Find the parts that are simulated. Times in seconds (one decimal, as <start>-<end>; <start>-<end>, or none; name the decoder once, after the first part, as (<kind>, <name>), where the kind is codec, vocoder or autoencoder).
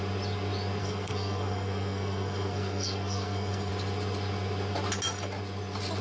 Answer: 0.8-3.7 (codec, SNAC)